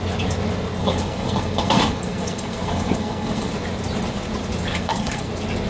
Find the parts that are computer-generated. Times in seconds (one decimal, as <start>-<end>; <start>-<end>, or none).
0.8-3.5; 4.7-5.3